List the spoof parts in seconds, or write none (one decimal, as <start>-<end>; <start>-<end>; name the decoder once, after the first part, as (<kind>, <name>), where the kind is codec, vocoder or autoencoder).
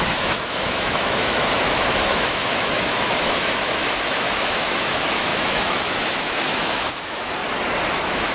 0.0-7.4 (autoencoder, DAC-VAE); 7.9-8.3